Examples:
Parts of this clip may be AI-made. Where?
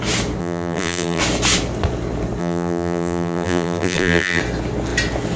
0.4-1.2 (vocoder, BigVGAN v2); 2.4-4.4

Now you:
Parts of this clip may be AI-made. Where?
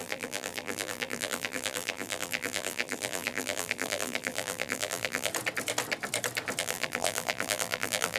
0.0-5.3 (vocoder, BigVGAN v2); 6.6-8.2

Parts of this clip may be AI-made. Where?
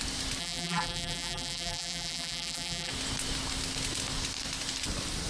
0.4-2.9 (vocoder, BigVGAN v2)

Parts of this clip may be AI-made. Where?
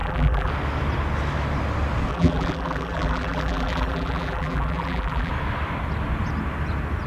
0.0-0.5 (vocoder, BigVGAN v2); 2.1-5.3